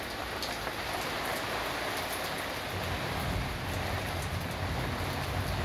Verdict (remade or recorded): recorded